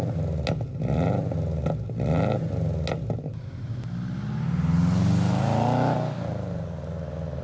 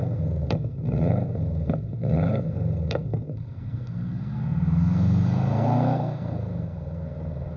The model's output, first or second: second